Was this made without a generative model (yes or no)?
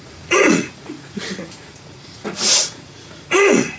no